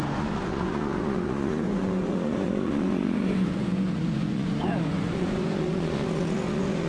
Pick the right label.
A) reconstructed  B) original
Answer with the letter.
A